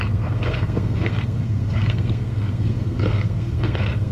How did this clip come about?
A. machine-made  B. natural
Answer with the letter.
A